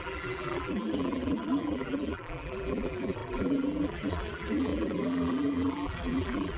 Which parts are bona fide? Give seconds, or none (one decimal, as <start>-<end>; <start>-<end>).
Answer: none

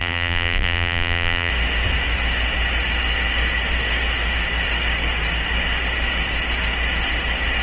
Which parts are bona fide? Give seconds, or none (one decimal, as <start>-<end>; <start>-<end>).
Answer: 1.5-7.6

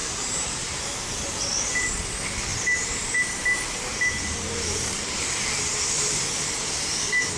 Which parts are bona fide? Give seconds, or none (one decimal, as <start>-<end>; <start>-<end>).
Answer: 1.2-2.5; 6.2-7.4

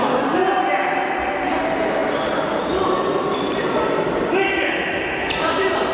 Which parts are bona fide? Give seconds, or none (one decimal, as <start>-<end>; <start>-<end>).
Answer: 0.0-5.9

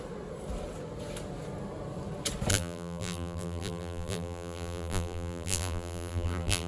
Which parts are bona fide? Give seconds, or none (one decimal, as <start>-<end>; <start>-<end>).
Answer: 0.0-2.5

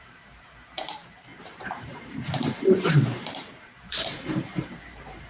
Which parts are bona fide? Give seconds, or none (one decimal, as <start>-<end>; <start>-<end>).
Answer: none

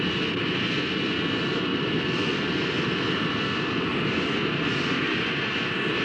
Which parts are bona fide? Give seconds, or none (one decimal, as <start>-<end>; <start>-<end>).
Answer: 0.0-1.7; 2.3-3.9; 5.3-6.0

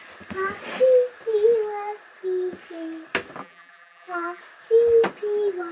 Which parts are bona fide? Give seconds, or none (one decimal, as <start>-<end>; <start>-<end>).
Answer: 0.0-3.4; 4.4-5.7